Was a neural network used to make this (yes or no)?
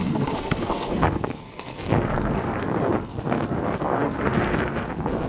yes